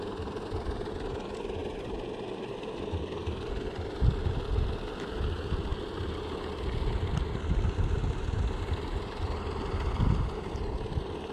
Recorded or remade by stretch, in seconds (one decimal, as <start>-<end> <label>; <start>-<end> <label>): 0.0-11.3 recorded